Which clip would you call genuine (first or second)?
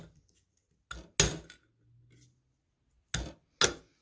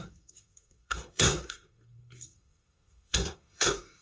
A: first